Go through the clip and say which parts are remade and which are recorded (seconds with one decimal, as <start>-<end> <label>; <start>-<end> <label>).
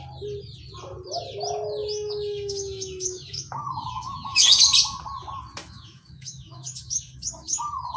0.0-1.8 recorded; 1.8-4.6 remade; 4.6-5.6 recorded; 5.6-8.0 remade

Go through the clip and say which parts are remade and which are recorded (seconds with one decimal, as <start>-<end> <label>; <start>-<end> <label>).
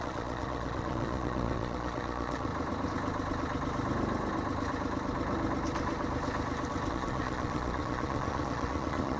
0.0-2.5 remade; 2.5-6.9 recorded; 6.9-9.2 remade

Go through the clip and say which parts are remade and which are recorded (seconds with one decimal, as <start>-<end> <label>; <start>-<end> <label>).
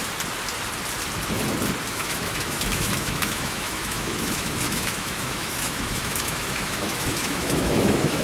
0.0-1.9 recorded; 1.9-8.2 remade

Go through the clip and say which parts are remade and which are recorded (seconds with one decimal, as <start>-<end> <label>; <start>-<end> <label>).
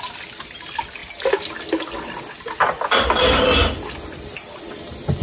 0.0-5.2 recorded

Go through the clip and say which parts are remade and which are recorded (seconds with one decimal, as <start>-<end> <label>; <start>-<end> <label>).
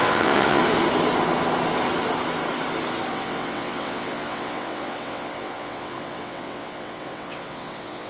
0.0-0.6 remade; 0.6-3.1 recorded; 3.1-8.1 remade